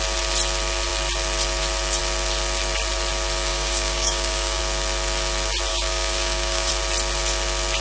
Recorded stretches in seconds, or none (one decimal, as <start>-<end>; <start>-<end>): 0.0-3.5; 4.6-5.7; 6.7-7.8